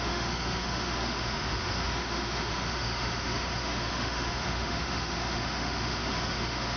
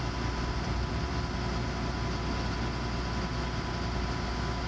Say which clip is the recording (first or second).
second